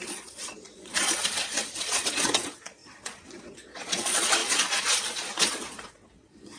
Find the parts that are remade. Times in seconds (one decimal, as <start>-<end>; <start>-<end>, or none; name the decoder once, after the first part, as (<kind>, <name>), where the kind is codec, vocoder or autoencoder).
0.0-6.6 (vocoder, Vocos)